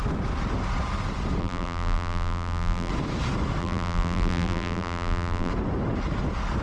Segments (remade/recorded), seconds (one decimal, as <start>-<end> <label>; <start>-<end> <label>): 0.0-1.4 recorded; 1.4-2.9 remade; 2.9-3.6 recorded; 3.6-5.5 remade; 5.5-6.6 recorded